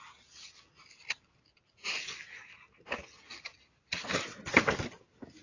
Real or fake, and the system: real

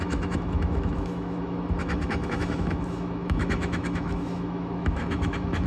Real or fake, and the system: fake, autoencoder, DAC-VAE